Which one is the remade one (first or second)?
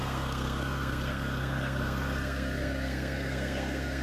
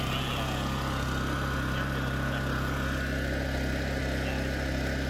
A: first